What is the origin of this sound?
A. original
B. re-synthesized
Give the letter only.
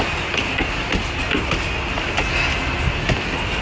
A